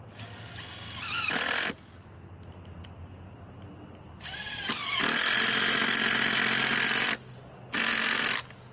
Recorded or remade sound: recorded